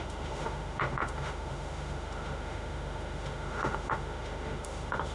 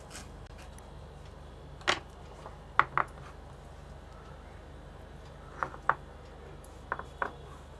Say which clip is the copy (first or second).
first